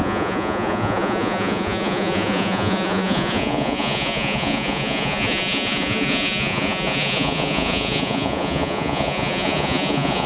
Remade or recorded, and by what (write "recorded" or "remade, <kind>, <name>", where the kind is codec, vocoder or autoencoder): remade, vocoder, Vocos